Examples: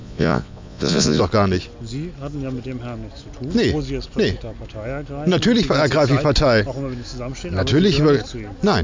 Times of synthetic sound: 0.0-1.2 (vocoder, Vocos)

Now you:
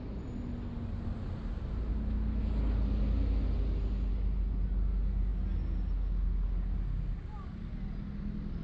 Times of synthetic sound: none

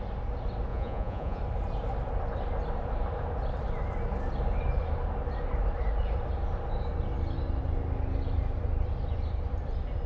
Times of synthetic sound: 0.7-1.4 (vocoder, Vocos)

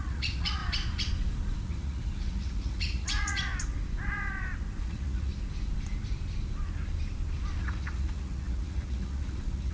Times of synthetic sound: 0.0-0.6 (vocoder, Vocos); 1.6-3.5; 4.8-5.3; 7.6-9.7